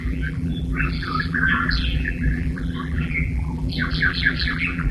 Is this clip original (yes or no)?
no